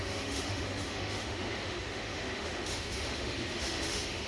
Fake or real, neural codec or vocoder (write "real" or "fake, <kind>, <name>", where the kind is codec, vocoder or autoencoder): fake, autoencoder, DAC-VAE